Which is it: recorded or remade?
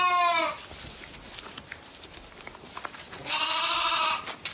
recorded